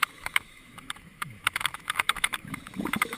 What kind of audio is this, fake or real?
fake